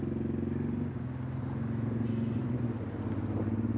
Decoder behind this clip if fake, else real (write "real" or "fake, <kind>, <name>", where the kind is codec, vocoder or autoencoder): real